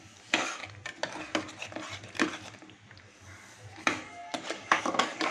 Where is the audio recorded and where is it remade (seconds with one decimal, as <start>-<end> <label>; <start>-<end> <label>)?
0.0-0.6 remade; 0.6-3.0 recorded; 3.0-5.3 remade